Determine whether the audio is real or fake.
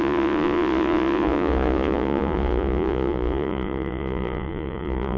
fake